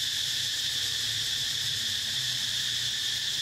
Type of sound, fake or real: fake